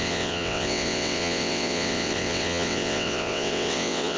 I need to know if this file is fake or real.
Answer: fake